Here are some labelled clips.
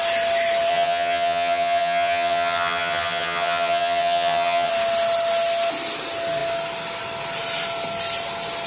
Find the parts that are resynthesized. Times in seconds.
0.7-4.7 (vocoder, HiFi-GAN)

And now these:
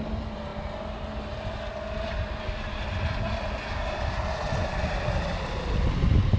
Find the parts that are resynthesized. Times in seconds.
none